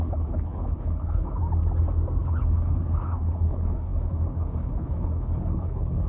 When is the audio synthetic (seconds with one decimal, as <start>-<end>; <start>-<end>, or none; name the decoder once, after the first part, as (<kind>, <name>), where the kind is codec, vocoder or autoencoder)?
0.0-1.4 (codec, HILCodec); 2.2-6.1